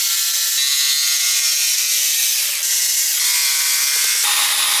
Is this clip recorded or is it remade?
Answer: recorded